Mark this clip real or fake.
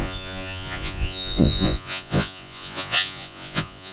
fake